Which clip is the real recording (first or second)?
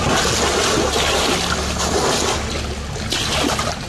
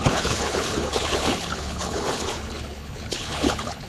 first